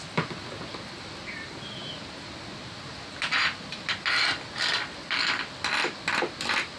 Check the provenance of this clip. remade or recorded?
recorded